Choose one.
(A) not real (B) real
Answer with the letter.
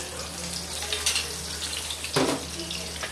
B